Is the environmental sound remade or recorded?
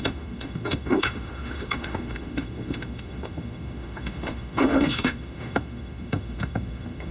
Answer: remade